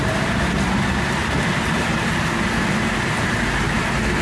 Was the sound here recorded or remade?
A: recorded